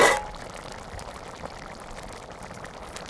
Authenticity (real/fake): real